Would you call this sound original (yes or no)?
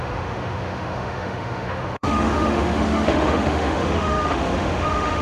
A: no